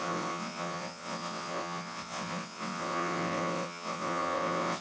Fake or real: fake